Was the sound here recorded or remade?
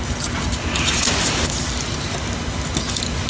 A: recorded